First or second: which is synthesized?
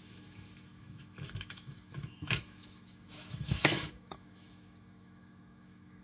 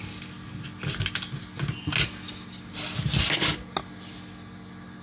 first